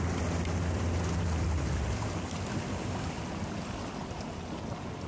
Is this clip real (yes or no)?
yes